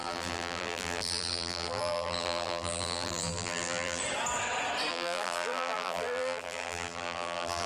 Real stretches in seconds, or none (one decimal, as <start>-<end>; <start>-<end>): 4.0-4.9